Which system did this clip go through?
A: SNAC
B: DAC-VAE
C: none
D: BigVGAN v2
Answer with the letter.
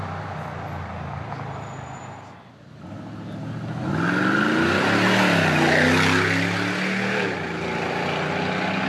C